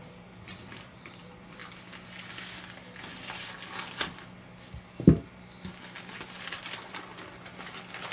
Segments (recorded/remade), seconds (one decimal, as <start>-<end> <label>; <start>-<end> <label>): 0.0-1.6 remade; 1.6-6.5 recorded; 6.5-7.1 remade; 7.1-8.1 recorded